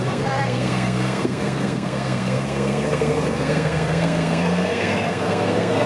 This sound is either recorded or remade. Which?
remade